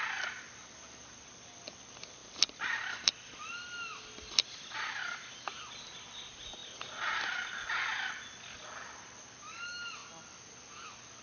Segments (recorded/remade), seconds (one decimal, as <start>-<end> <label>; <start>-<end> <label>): 0.0-11.2 recorded

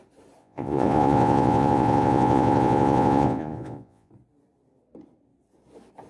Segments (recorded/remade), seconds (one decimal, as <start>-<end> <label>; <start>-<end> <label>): 0.0-0.4 recorded; 0.4-4.1 remade; 4.1-6.1 recorded